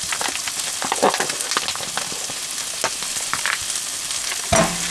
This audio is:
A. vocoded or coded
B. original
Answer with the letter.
B